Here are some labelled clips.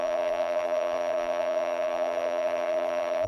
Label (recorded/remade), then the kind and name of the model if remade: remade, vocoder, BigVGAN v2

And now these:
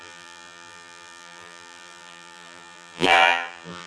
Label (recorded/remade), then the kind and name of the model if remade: remade, vocoder, BigVGAN v2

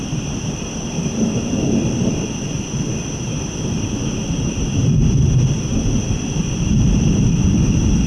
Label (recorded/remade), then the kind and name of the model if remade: remade, vocoder, BigVGAN v2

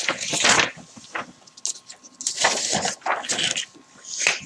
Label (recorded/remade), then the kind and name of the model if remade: recorded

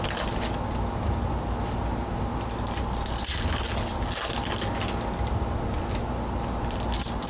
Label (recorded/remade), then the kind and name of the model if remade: recorded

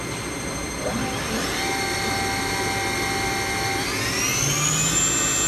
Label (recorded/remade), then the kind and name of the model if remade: recorded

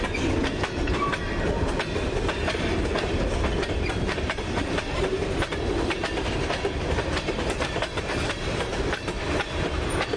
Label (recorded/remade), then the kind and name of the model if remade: remade, vocoder, BigVGAN v2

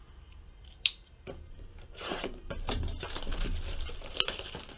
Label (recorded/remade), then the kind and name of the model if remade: remade, vocoder, BigVGAN v2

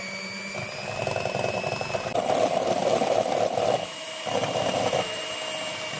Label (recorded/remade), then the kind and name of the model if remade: remade, vocoder, BigVGAN v2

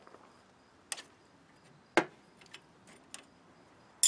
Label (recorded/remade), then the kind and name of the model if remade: recorded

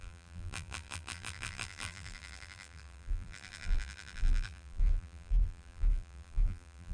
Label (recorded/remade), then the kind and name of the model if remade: remade, vocoder, BigVGAN v2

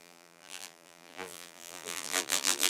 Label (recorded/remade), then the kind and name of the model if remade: remade, vocoder, BigVGAN v2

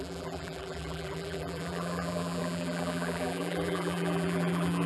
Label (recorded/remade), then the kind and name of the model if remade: remade, vocoder, BigVGAN v2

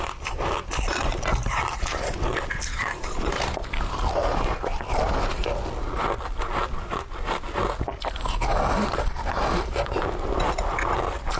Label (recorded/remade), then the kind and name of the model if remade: recorded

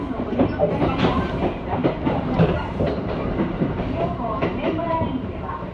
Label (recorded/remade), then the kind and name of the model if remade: remade, vocoder, BigVGAN v2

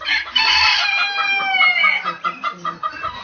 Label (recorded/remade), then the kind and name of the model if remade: remade, vocoder, BigVGAN v2